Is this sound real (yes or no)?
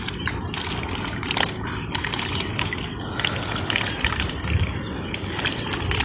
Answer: yes